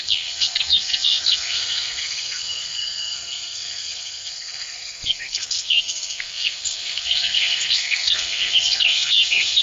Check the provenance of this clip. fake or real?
fake